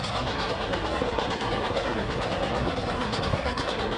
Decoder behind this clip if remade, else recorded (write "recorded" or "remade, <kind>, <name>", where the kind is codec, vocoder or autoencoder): remade, codec, SNAC